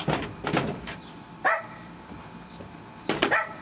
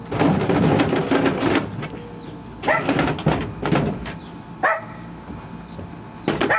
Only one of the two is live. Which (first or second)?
second